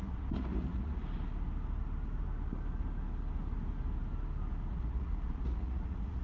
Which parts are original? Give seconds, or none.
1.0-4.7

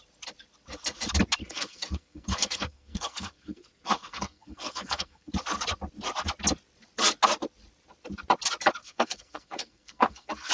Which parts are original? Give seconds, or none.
0.0-1.4; 5.3-8.8

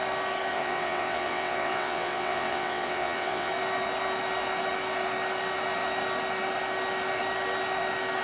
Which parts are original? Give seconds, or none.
0.0-0.5; 3.5-8.2

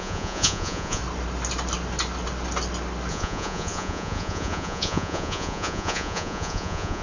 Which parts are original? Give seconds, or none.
1.0-3.1

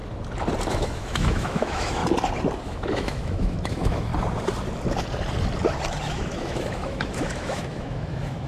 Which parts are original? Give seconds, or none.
0.0-0.7; 2.0-2.6; 4.1-6.0